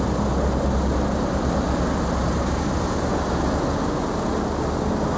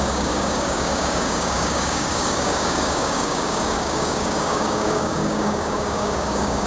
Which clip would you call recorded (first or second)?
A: first